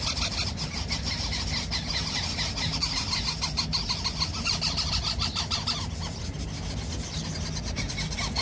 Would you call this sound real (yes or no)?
yes